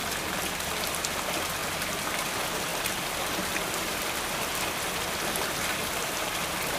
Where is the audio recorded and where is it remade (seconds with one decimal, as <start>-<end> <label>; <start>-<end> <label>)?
0.0-6.8 recorded